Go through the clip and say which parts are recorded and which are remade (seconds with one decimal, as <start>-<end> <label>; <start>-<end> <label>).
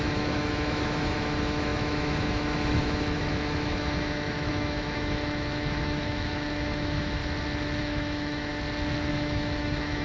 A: 0.0-7.2 remade; 7.2-7.8 recorded; 7.8-8.5 remade; 8.5-9.1 recorded; 9.1-10.0 remade